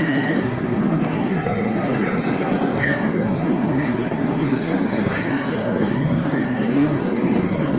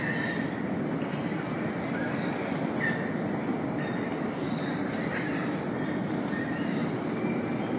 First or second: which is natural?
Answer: second